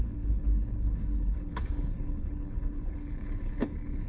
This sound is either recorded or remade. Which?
remade